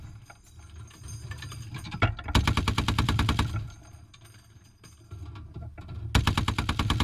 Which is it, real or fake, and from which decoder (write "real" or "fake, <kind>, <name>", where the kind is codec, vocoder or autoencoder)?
real